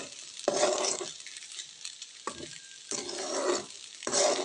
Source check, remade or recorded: recorded